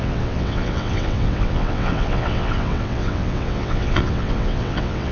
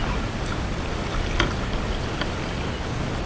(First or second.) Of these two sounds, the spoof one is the first